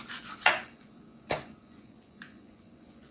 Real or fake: fake